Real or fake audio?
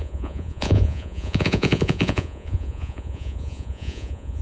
fake